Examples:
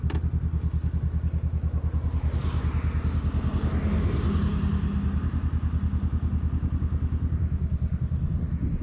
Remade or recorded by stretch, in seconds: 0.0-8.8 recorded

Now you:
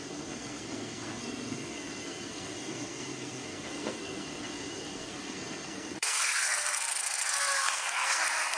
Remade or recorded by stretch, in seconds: 0.0-8.6 remade

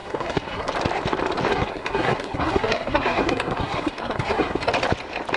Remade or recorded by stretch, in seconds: 0.0-0.7 remade; 0.7-1.5 recorded; 1.5-4.7 remade; 4.7-5.4 recorded

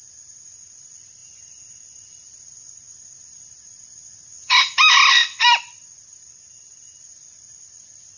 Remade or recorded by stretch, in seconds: 0.0-8.2 recorded